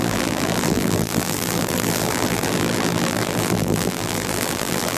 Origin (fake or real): fake